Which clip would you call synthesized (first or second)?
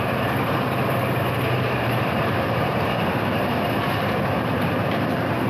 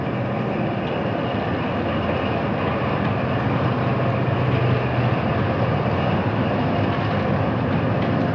first